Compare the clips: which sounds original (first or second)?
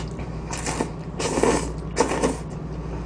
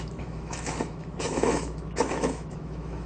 first